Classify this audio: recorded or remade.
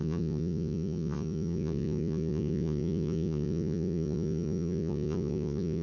remade